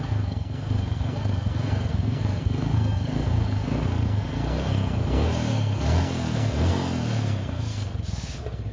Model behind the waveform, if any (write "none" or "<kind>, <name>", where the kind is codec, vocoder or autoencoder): codec, SNAC